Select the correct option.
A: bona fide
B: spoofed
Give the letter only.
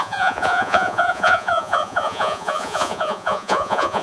B